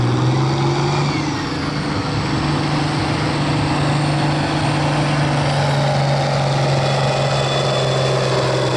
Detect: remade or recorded recorded